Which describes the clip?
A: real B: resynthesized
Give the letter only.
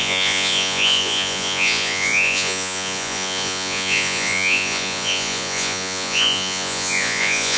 B